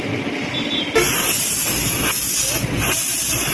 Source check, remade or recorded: recorded